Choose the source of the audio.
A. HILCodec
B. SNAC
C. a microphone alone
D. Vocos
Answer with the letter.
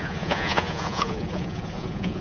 D